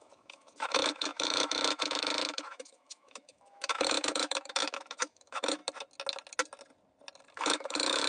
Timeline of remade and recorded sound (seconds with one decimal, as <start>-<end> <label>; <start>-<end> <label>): 0.0-5.6 remade; 5.6-7.3 recorded; 7.3-8.1 remade